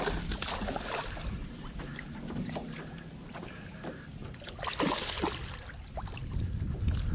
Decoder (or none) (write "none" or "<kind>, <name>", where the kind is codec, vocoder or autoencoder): none